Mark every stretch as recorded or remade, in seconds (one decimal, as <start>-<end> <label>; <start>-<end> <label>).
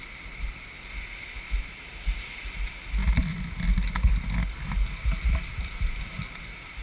0.0-6.8 recorded